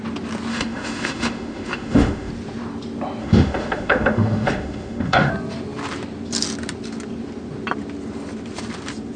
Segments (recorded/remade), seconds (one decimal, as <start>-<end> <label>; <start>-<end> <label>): 0.0-0.5 recorded; 0.5-2.3 remade; 2.3-3.2 recorded; 3.2-5.3 remade; 5.3-9.2 recorded